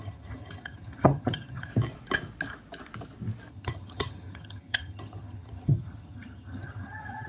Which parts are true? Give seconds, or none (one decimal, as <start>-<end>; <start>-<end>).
1.7-3.5